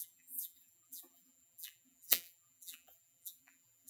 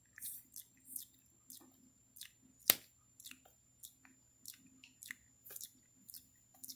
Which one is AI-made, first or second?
first